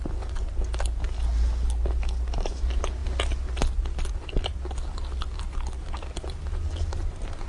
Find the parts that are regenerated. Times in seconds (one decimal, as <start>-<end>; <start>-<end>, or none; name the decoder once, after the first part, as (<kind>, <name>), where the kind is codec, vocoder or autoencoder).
none